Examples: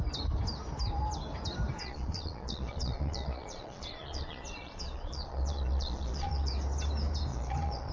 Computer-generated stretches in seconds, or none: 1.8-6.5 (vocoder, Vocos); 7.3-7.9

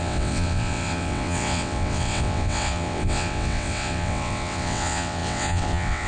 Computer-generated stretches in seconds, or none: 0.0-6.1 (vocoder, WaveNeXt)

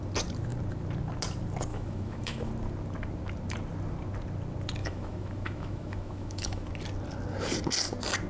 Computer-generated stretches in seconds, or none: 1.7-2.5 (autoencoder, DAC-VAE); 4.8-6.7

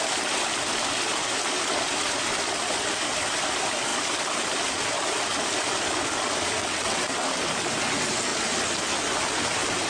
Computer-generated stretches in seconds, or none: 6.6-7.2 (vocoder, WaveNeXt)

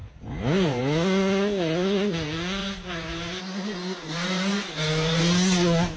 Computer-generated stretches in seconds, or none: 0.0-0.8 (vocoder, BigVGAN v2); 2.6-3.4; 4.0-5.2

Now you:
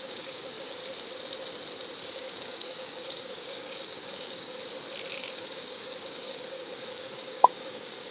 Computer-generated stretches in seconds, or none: 0.0-0.8 (codec, DAC); 2.0-4.6; 5.1-8.1

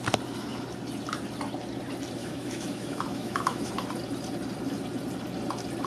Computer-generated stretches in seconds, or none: 2.2-3.7 (autoencoder, DAC-VAE)

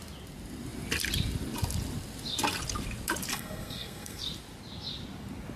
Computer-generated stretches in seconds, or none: 3.3-4.2 (codec, SNAC)